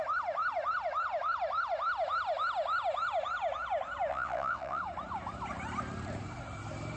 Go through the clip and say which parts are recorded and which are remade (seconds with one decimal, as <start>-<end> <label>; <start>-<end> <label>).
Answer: 0.0-4.1 recorded; 4.1-4.8 remade; 4.8-7.0 recorded